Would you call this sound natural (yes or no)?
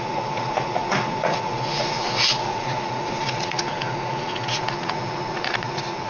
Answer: no